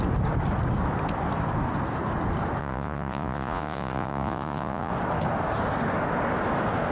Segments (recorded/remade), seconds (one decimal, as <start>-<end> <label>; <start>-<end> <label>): 0.0-2.6 recorded; 2.6-4.9 remade; 4.9-6.9 recorded